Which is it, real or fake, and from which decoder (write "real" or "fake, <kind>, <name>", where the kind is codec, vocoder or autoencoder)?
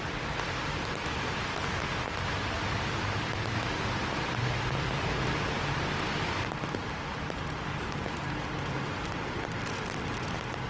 fake, vocoder, BigVGAN v2